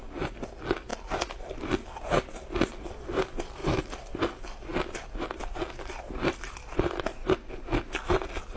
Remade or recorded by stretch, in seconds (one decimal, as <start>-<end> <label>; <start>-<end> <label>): 0.0-8.6 recorded